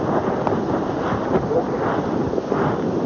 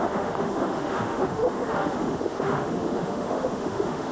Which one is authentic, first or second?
first